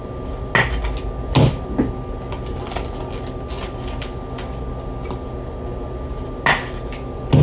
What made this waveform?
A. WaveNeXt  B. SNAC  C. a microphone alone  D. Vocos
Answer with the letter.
C